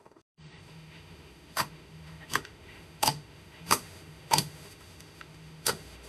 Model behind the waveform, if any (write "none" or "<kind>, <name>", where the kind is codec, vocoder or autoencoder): autoencoder, DAC-VAE